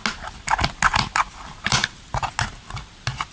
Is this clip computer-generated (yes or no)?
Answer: no